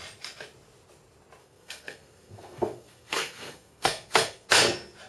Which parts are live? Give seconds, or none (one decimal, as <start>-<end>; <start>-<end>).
0.0-1.4; 4.5-5.1